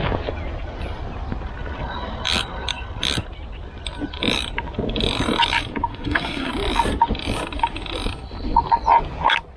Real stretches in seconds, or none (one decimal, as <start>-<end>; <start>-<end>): 0.0-5.9; 6.5-9.6